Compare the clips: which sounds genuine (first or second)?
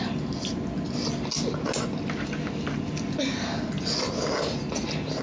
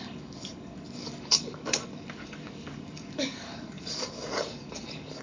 first